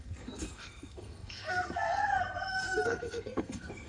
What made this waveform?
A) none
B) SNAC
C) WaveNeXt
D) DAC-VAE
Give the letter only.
B